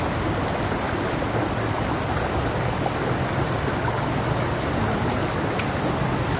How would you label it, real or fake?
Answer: real